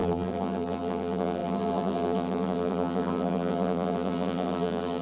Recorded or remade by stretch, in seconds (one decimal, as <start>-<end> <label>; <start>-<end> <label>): 0.0-5.0 remade